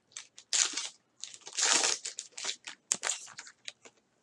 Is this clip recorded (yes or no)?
yes